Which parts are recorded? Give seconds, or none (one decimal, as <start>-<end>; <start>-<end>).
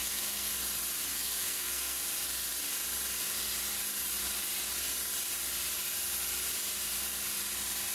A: 0.5-1.1; 2.0-7.9